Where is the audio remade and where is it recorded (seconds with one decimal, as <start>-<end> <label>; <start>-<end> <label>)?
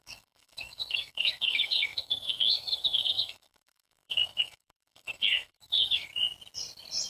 0.0-6.1 remade; 6.1-7.1 recorded